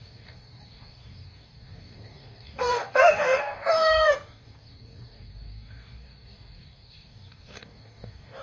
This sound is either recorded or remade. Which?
remade